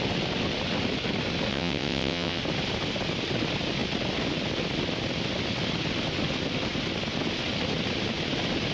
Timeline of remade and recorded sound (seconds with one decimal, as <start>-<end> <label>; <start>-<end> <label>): 0.0-1.5 recorded; 1.5-2.4 remade; 2.4-8.7 recorded